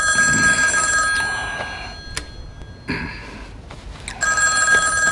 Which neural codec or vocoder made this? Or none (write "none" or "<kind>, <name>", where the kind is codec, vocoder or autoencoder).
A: none